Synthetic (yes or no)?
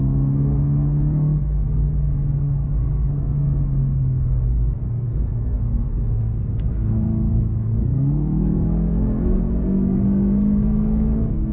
yes